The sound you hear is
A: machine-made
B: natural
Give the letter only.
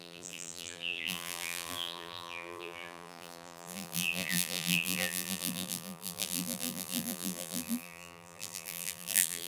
A